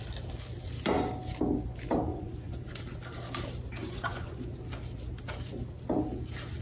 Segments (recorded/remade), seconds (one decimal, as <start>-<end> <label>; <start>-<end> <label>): 0.0-2.1 recorded; 2.1-2.8 remade; 2.8-3.8 recorded; 3.8-4.6 remade; 4.6-6.6 recorded